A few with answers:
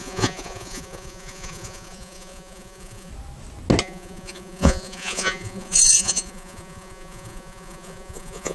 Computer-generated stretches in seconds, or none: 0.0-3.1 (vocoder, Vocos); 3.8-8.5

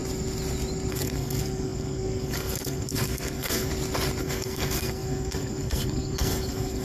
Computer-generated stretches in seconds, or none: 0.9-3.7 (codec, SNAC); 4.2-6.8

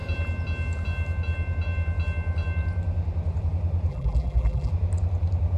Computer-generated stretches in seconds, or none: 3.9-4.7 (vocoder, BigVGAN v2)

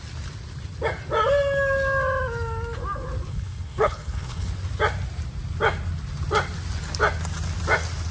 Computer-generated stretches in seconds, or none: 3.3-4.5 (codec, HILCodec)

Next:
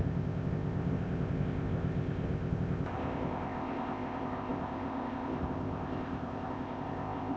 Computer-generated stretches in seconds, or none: 0.0-7.4 (codec, ZipCodec)

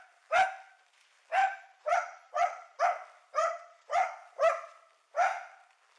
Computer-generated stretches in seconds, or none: 1.4-2.8 (vocoder, Vocos); 3.4-4.1

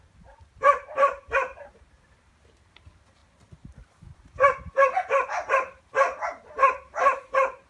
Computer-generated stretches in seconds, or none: 0.0-7.7 (vocoder, BigVGAN v2)